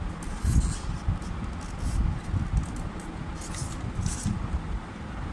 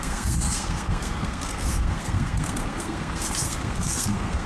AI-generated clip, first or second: second